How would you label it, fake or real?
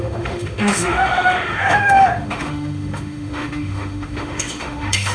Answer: fake